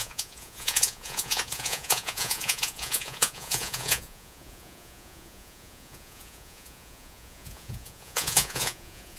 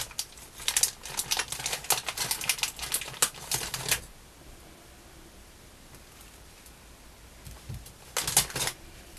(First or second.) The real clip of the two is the second